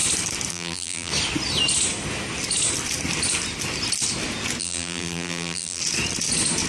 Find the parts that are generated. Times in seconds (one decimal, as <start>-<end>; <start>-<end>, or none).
0.5-1.1; 4.6-5.8